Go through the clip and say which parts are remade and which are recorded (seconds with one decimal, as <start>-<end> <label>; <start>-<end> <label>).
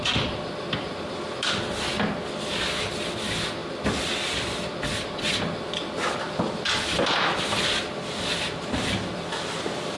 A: 0.0-10.0 recorded